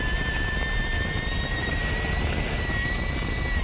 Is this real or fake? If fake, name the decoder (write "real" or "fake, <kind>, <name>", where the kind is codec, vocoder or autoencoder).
real